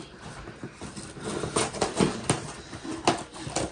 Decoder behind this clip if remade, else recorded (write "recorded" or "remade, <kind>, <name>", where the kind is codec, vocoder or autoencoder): recorded